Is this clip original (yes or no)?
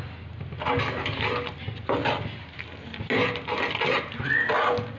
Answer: yes